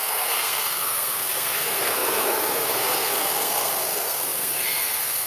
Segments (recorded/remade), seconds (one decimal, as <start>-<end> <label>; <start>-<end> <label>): 0.0-5.3 remade